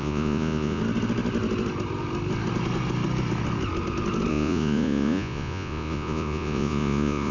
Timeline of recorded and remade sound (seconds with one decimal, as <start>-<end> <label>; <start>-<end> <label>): 0.0-0.8 remade; 0.8-4.3 recorded; 4.3-7.3 remade